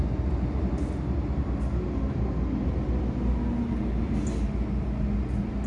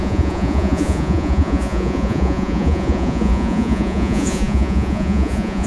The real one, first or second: first